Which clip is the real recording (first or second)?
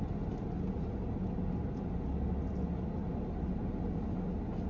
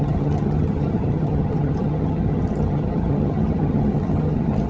first